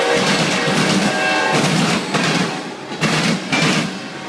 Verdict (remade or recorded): recorded